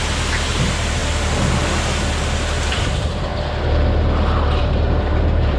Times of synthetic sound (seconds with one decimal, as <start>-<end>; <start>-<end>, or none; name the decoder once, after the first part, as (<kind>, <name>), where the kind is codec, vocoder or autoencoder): 0.0-1.0 (vocoder, BigVGAN v2); 2.7-3.3; 4.6-5.6